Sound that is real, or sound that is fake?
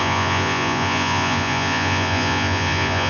fake